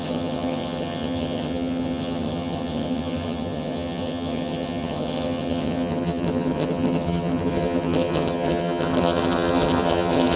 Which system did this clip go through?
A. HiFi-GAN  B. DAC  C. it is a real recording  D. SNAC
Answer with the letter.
A